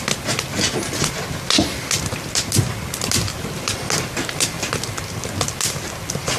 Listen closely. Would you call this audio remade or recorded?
recorded